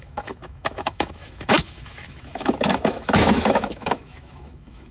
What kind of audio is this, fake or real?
fake